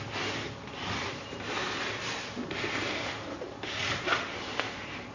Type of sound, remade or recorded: recorded